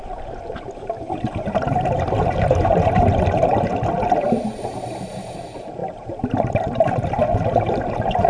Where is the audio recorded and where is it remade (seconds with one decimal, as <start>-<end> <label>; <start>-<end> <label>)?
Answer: 0.0-3.7 remade; 3.7-4.5 recorded; 4.5-8.3 remade

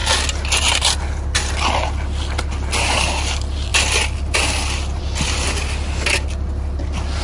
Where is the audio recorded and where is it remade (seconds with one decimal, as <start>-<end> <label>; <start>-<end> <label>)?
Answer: 0.0-7.2 recorded